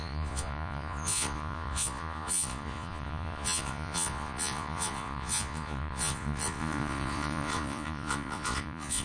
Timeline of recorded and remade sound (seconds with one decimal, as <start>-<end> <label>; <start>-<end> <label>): 0.0-9.0 remade